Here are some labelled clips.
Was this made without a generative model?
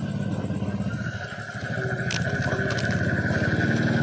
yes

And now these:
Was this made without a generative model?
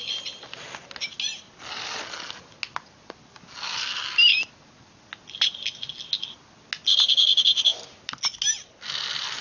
yes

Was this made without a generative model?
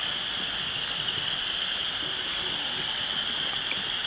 yes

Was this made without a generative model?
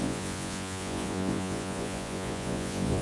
no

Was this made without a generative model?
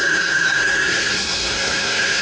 no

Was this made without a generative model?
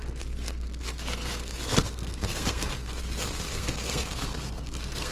no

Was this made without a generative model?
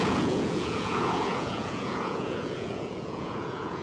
no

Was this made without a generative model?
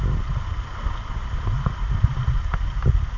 yes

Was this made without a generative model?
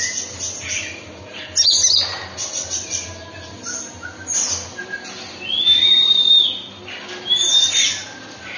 yes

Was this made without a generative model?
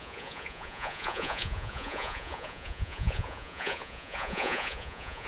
no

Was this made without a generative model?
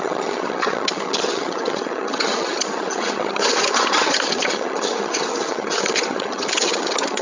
no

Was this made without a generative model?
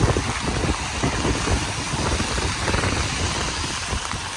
yes